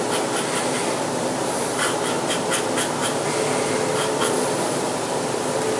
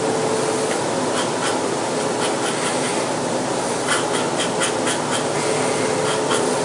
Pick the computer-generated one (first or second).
first